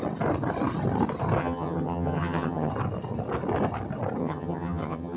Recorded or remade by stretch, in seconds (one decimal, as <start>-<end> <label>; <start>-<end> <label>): 0.0-1.4 recorded; 1.4-2.7 remade; 2.7-4.2 recorded; 4.2-5.2 remade